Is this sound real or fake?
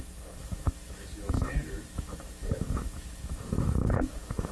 fake